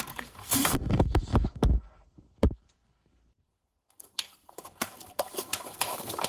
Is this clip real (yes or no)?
no